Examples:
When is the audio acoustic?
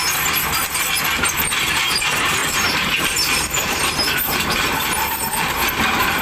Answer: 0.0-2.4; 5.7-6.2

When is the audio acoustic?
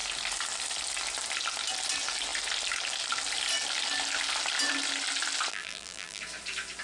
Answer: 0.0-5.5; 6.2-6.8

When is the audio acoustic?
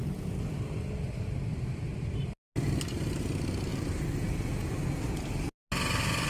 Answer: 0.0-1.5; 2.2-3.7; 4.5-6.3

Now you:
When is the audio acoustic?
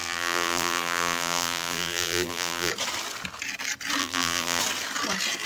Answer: 2.7-4.0; 4.6-5.5